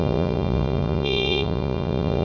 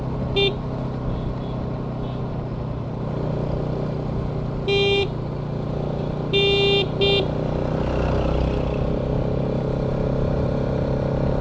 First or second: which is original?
second